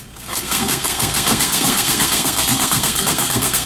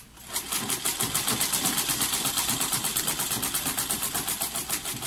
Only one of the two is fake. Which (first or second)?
first